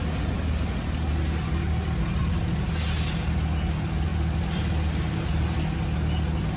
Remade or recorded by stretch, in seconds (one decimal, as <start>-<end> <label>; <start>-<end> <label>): 0.0-2.2 recorded; 2.2-2.7 remade; 2.7-6.6 recorded